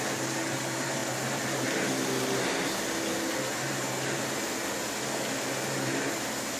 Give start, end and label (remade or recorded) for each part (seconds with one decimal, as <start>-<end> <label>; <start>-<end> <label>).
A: 0.0-6.6 recorded